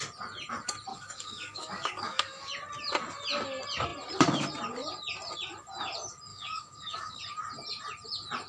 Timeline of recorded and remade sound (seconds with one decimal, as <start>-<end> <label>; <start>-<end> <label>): 0.0-0.9 recorded; 0.9-2.5 remade; 2.5-6.3 recorded; 6.3-7.2 remade; 7.2-8.5 recorded

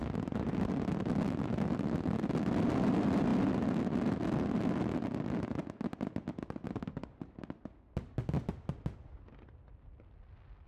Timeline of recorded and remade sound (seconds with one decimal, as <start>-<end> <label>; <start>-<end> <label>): 0.0-10.7 recorded

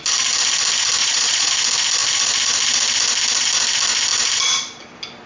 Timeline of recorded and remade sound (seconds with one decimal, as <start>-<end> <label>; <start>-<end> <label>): 0.0-1.0 recorded; 1.0-1.5 remade; 1.5-5.3 recorded

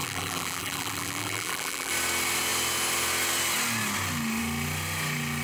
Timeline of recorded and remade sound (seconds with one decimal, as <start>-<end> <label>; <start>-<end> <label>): 0.0-1.9 remade; 1.9-5.4 recorded

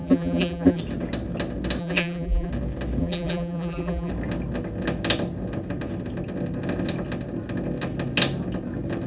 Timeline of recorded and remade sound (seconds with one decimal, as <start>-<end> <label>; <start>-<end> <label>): 0.0-0.8 remade; 0.8-1.8 recorded; 1.8-2.5 remade; 2.5-3.0 recorded; 3.0-4.1 remade; 4.1-9.1 recorded